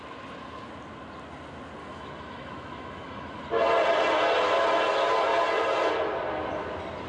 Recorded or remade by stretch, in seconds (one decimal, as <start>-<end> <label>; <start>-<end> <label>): 0.0-1.8 recorded; 1.8-3.4 remade; 3.4-7.1 recorded